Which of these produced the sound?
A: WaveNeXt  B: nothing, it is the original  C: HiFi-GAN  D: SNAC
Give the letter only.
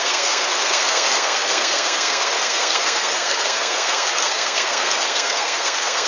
D